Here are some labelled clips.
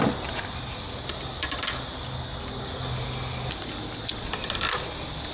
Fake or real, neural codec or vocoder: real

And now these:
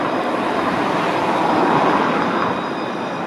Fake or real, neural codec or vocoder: real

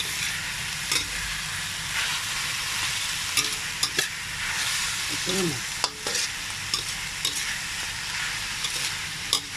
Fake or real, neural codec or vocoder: fake, vocoder, BigVGAN v2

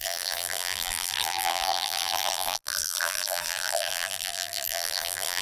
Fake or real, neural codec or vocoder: fake, vocoder, BigVGAN v2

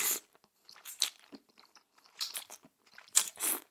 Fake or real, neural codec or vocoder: fake, vocoder, BigVGAN v2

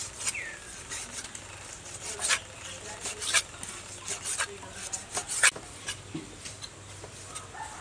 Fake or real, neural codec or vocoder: real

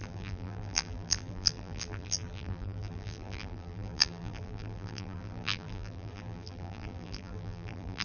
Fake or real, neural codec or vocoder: fake, vocoder, BigVGAN v2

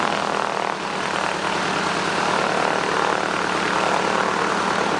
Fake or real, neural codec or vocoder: real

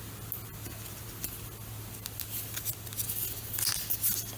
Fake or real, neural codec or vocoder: real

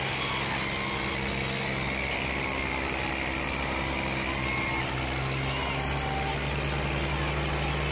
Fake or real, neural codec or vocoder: real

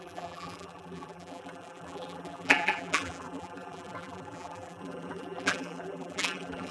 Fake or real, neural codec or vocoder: fake, vocoder, BigVGAN v2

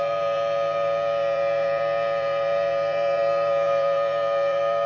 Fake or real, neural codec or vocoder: fake, vocoder, BigVGAN v2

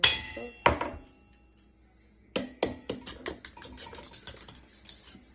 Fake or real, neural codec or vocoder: real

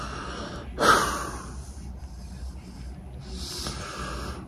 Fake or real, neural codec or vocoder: real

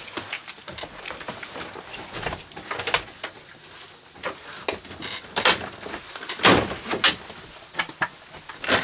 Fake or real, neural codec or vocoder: real